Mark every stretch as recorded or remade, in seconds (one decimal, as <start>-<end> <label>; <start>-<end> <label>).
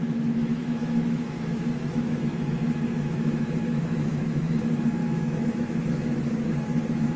0.0-7.2 remade